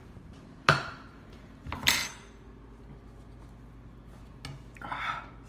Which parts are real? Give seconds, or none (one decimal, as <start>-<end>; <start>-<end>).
2.0-5.5